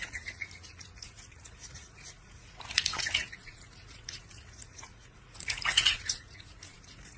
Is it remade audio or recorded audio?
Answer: remade